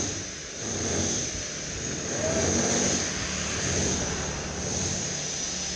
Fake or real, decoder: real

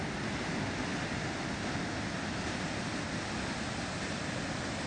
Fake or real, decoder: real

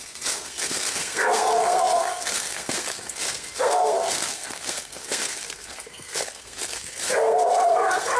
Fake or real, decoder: fake, codec, SNAC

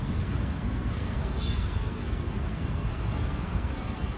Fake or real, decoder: fake, codec, SNAC